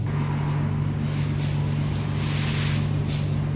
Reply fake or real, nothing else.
real